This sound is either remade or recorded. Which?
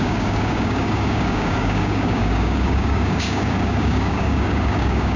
remade